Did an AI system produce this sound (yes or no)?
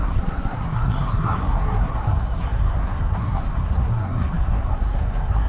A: yes